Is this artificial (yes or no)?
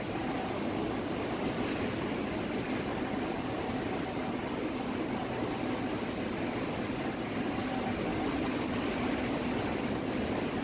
no